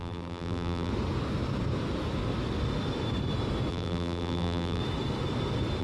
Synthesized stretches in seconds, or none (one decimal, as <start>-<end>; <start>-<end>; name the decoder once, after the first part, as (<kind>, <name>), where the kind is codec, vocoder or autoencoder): 0.0-0.9 (vocoder, BigVGAN v2); 3.7-4.8